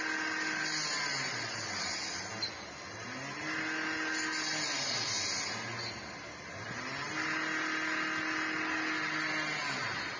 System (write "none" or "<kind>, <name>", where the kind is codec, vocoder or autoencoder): none